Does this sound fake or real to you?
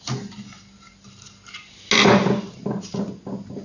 real